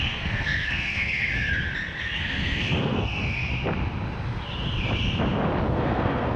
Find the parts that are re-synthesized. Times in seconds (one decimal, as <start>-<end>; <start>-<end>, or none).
0.0-1.3; 2.0-3.5; 5.7-6.4